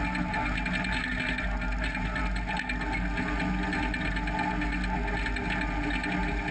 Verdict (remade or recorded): recorded